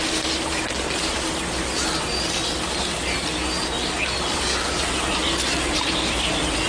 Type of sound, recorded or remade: recorded